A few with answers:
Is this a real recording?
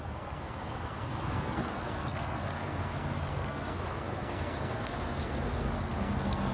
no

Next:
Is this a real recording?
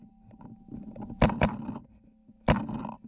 yes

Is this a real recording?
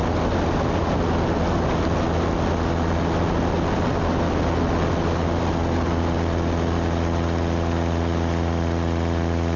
yes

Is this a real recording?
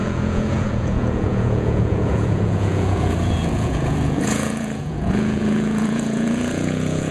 no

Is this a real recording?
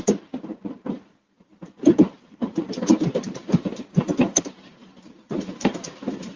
no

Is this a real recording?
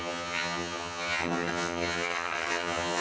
no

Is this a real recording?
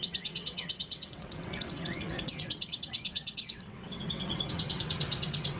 no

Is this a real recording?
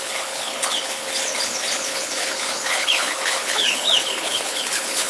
no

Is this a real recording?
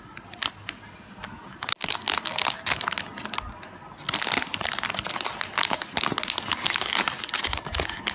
yes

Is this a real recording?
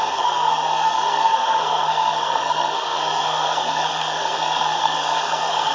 no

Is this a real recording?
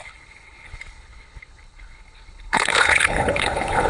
no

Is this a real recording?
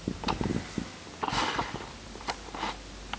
yes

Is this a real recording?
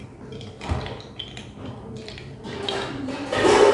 no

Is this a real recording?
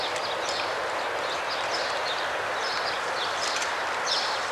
yes